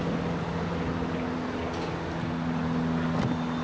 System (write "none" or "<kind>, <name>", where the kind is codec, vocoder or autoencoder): none